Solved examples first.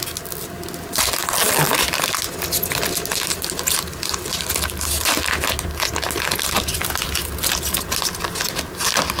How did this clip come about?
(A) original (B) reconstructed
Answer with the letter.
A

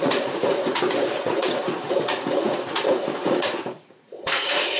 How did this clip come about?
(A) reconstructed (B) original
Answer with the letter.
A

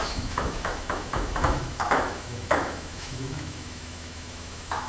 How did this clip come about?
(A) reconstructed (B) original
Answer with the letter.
A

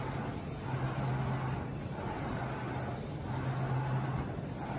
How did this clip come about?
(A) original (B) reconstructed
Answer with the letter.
A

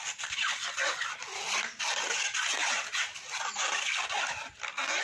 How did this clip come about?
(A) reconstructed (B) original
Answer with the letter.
B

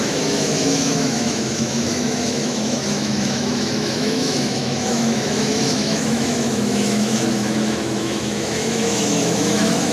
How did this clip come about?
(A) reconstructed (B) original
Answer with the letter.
A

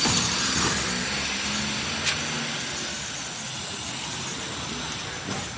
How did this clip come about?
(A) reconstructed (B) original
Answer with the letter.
B